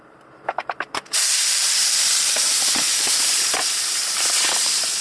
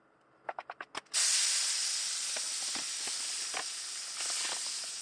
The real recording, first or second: second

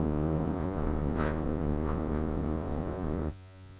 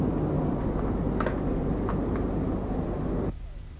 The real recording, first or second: second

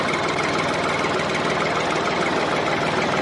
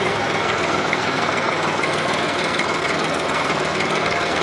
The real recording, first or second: first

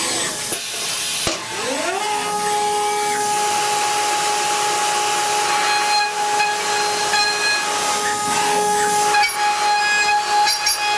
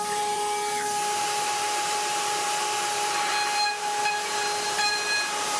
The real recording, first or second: first